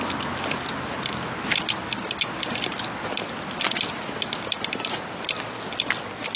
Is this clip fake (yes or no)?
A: no